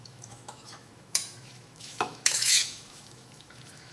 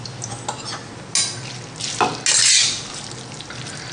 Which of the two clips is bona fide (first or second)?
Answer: second